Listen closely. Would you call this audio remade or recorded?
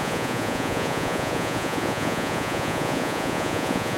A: remade